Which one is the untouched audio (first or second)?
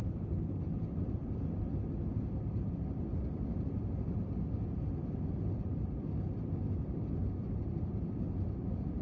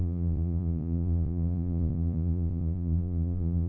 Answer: first